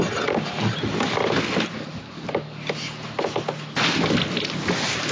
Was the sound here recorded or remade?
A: recorded